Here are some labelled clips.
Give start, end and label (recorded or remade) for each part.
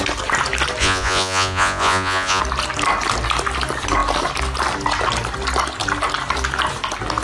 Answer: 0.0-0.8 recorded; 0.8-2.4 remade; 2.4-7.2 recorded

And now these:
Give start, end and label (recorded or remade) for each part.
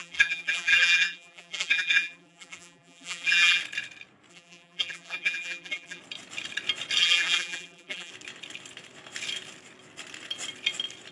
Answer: 0.0-3.6 remade; 3.6-4.3 recorded; 4.3-6.0 remade; 6.0-7.0 recorded; 7.0-8.1 remade; 8.1-11.1 recorded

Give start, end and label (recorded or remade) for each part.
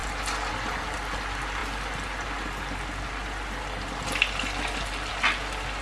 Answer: 0.0-5.8 recorded